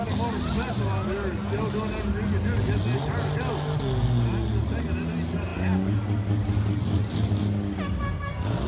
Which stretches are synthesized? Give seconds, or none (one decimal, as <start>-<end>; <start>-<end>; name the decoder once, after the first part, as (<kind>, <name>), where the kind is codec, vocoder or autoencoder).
none